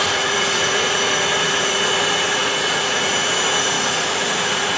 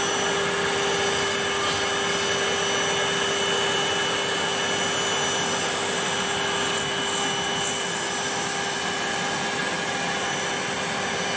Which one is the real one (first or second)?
second